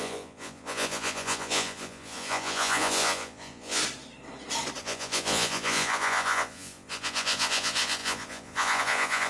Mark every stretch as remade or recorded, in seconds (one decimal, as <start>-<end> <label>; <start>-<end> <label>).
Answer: 0.0-3.8 remade; 3.8-4.8 recorded; 4.8-9.3 remade

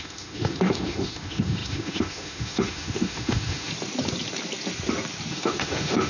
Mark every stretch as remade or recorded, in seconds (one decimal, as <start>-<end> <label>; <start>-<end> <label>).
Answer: 0.0-3.7 remade; 3.7-5.3 recorded; 5.3-6.1 remade

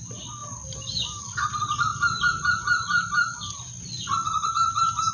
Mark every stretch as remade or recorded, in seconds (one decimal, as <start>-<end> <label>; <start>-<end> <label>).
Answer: 0.0-5.1 recorded

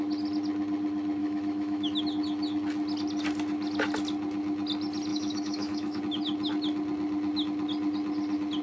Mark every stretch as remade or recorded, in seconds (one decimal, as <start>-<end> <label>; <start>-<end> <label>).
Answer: 0.0-1.2 recorded; 1.2-2.0 remade; 2.0-5.1 recorded; 5.1-6.0 remade; 6.0-8.6 recorded

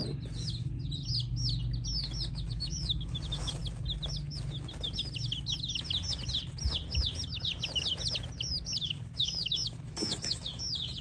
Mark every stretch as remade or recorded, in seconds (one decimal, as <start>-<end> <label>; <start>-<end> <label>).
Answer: 0.0-2.3 recorded; 2.3-3.6 remade; 3.6-8.8 recorded; 8.8-11.0 remade

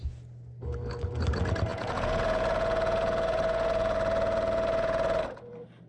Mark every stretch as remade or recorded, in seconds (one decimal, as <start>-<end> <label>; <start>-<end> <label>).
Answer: 0.0-1.7 recorded; 1.7-5.2 remade; 5.2-5.9 recorded

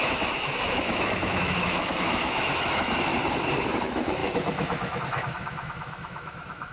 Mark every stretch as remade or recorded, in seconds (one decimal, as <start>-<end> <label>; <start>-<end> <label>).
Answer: 0.0-3.1 remade; 3.1-3.7 recorded; 3.7-6.7 remade